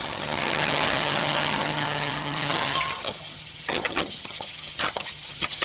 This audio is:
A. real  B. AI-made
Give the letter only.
B